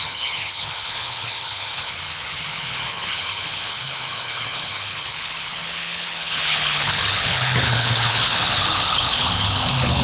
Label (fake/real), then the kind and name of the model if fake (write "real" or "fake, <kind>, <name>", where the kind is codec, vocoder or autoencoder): fake, codec, HILCodec